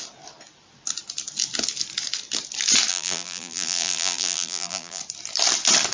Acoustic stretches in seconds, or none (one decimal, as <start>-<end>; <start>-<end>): 0.0-2.9; 5.0-5.9